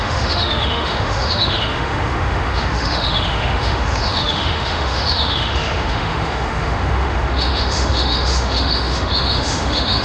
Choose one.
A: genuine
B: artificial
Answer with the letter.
B